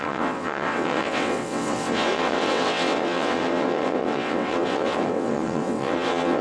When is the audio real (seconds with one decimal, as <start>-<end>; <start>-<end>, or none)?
none